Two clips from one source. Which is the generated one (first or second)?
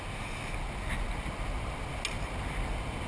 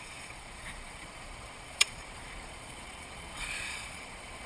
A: second